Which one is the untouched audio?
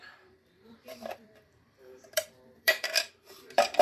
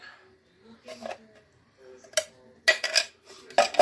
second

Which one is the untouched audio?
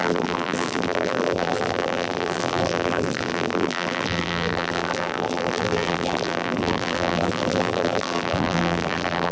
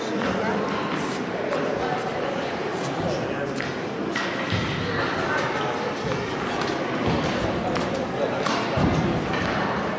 second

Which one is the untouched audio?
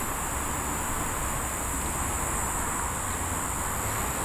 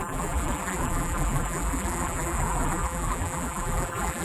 first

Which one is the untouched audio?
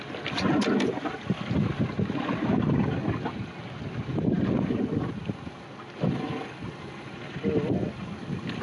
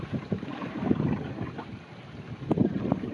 first